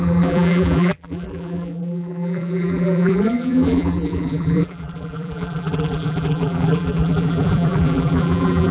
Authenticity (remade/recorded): remade